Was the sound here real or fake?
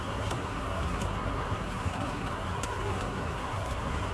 fake